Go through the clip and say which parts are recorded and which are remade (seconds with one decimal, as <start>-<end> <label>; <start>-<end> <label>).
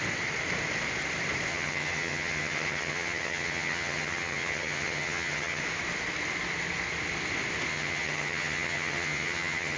0.0-1.5 recorded; 1.5-5.6 remade; 5.6-7.7 recorded; 7.7-9.8 remade